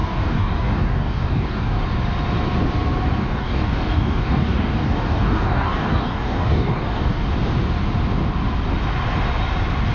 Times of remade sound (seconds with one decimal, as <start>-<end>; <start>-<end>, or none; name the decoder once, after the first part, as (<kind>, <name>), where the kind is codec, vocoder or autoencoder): 0.0-1.8 (codec, DAC); 3.2-7.3